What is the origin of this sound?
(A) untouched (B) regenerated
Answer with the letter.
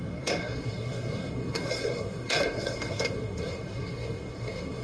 B